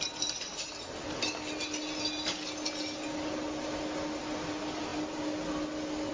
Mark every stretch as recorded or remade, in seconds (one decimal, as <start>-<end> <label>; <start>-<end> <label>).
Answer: 0.0-6.1 recorded